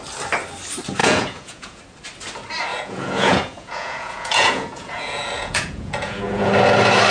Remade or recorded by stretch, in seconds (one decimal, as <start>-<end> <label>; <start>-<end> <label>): 0.0-1.0 recorded; 1.0-1.8 remade; 1.8-2.7 recorded; 2.7-6.5 remade; 6.5-7.1 recorded